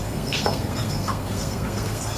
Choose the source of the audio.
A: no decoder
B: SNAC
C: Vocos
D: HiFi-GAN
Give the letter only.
B